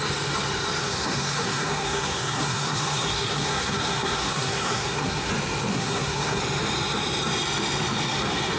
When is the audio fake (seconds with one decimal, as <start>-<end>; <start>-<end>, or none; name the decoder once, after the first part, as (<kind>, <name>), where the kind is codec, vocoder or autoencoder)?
0.8-5.3 (codec, SNAC); 5.7-6.4